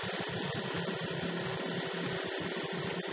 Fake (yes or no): no